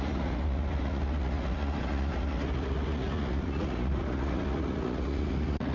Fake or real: fake